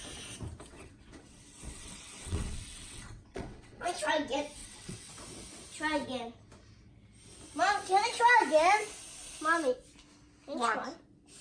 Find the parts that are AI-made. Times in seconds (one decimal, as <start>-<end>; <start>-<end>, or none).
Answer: 0.7-4.1; 4.6-5.1